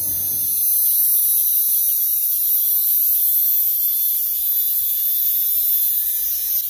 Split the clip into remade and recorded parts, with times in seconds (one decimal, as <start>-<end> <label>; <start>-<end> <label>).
0.0-1.4 recorded; 1.4-2.6 remade; 2.6-6.7 recorded

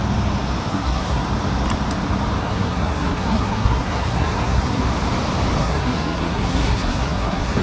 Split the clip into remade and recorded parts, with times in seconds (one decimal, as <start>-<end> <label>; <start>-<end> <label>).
0.0-0.7 recorded; 0.7-1.2 remade; 1.2-2.4 recorded; 2.4-4.8 remade; 4.8-5.6 recorded; 5.6-7.6 remade

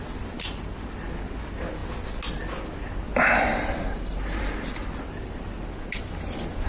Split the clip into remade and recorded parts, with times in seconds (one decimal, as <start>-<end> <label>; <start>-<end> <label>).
0.0-3.5 recorded; 3.5-4.4 remade; 4.4-6.7 recorded

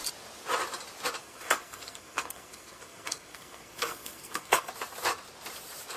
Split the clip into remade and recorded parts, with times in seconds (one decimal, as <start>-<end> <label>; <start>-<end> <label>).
0.0-1.2 recorded; 1.2-4.7 remade; 4.7-6.0 recorded